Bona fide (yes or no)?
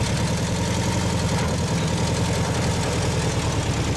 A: yes